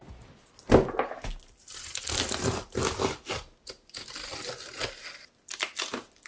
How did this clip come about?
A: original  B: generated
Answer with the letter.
A